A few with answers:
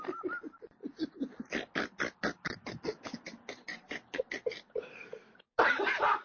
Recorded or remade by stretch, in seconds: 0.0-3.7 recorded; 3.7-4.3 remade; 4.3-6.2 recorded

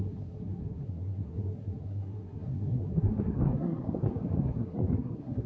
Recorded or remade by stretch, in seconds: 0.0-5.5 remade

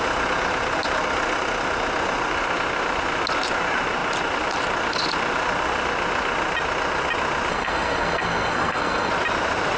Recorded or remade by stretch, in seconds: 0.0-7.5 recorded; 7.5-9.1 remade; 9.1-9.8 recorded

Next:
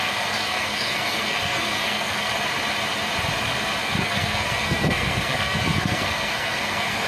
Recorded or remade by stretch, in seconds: 0.0-2.3 remade; 2.3-3.8 recorded; 3.8-7.1 remade

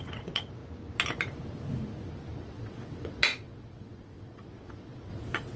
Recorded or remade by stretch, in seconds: 0.0-0.6 remade; 0.6-2.4 recorded; 2.4-5.6 remade

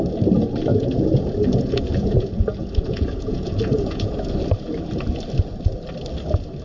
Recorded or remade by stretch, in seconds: 0.0-0.7 recorded; 0.7-4.1 remade; 4.1-6.6 recorded

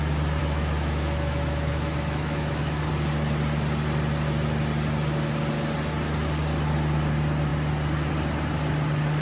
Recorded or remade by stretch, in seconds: 0.0-0.4 recorded; 0.4-2.9 remade; 2.9-9.2 recorded

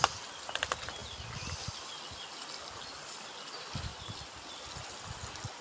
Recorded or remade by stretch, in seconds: 0.0-3.9 recorded; 3.9-4.5 remade; 4.5-5.6 recorded